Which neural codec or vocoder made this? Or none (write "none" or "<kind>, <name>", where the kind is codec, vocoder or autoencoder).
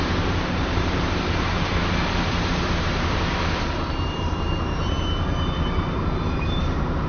vocoder, BigVGAN v2